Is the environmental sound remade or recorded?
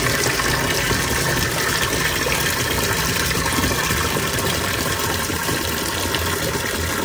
remade